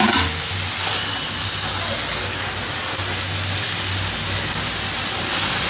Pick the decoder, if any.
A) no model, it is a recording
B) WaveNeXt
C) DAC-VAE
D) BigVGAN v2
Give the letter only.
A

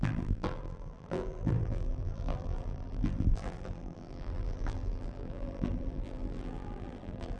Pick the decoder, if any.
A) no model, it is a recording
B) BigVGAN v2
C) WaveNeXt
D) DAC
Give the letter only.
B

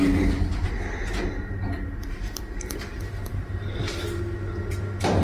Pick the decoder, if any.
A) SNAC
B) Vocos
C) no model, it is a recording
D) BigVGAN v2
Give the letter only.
C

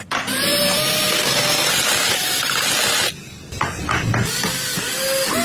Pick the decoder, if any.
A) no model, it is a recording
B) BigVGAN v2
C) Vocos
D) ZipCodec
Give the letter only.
A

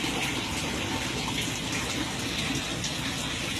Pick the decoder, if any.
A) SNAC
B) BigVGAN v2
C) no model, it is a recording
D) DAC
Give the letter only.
C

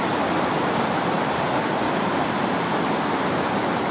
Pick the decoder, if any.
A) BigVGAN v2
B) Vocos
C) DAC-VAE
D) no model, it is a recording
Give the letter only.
D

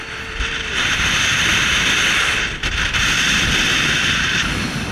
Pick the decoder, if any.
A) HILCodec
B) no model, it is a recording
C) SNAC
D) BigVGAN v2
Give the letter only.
D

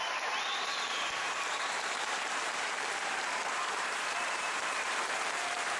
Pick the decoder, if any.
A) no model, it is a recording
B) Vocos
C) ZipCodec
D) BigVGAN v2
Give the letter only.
D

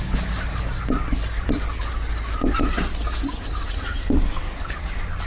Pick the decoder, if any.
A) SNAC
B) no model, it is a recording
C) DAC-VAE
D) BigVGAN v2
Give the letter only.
B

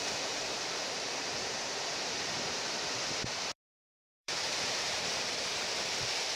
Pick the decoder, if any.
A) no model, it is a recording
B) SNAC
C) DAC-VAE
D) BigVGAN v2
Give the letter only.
D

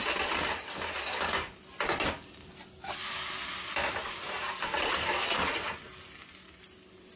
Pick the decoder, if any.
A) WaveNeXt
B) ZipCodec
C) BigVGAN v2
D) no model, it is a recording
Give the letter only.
D